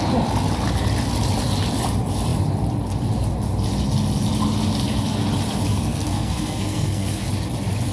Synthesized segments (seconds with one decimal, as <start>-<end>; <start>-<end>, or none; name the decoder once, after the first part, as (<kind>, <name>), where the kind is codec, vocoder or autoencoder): 5.7-7.3 (codec, SNAC)